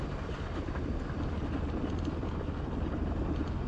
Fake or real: real